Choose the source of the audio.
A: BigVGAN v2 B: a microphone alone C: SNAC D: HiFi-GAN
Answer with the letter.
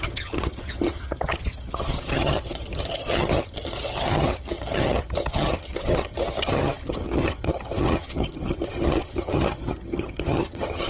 D